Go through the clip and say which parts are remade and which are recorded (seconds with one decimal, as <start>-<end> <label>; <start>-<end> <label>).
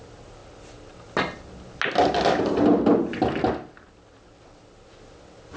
0.0-5.6 recorded